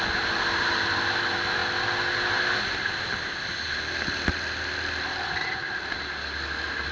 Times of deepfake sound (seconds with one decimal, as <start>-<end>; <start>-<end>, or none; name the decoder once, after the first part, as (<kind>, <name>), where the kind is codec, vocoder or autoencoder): none